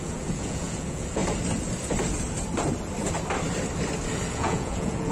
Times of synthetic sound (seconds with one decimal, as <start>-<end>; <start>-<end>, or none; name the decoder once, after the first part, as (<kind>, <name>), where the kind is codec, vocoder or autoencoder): 0.0-1.2 (vocoder, Vocos); 4.3-5.1